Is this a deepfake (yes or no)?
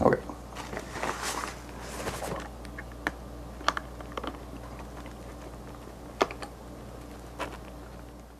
no